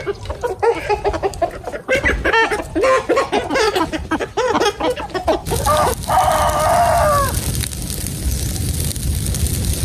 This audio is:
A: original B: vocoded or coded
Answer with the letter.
A